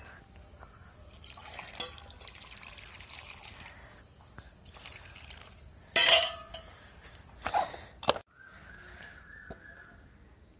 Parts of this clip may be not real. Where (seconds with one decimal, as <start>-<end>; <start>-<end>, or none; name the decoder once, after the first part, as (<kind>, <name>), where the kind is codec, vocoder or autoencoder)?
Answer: none